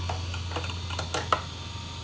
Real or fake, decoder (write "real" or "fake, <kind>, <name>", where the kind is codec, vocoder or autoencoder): real